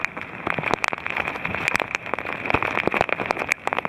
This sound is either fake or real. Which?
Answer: real